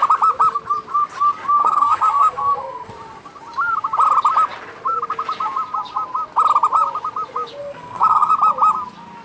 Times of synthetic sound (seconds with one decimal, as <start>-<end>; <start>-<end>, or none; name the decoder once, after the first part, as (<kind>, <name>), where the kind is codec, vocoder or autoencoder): 1.6-2.9 (codec, SNAC); 7.6-8.3